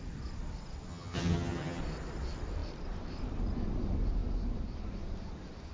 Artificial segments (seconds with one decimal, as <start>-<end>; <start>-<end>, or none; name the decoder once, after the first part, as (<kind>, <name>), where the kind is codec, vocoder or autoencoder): 0.9-1.8 (vocoder, HiFi-GAN)